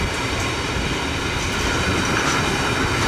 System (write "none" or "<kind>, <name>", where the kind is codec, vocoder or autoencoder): none